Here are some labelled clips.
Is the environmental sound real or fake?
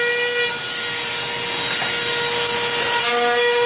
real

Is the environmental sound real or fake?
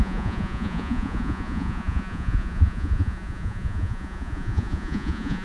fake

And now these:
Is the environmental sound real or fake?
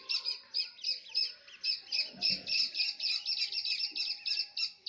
real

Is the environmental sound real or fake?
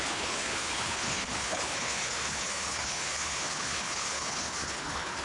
fake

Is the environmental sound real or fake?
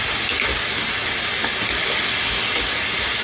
real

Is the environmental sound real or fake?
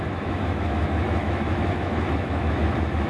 fake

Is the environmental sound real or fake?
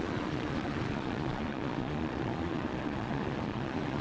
fake